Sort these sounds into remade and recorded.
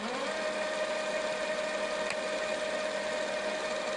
recorded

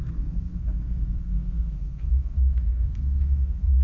remade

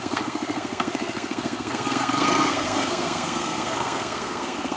remade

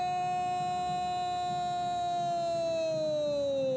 recorded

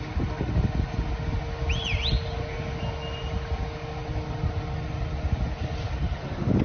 recorded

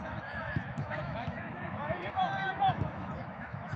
remade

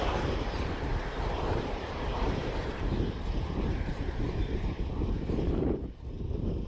remade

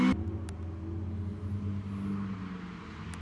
recorded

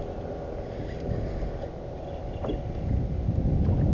recorded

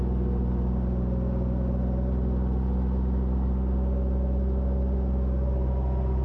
recorded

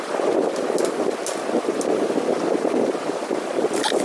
recorded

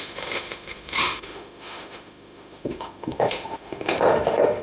remade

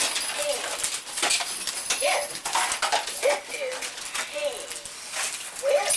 recorded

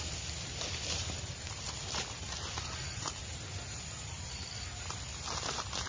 recorded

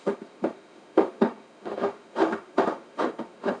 remade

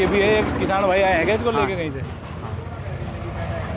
recorded